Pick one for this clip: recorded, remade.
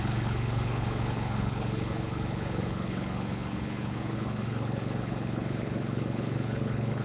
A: remade